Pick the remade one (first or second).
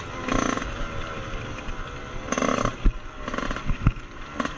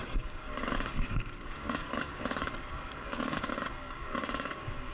second